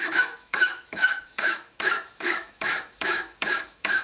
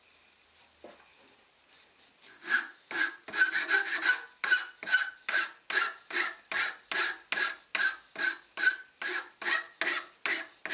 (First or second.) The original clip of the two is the second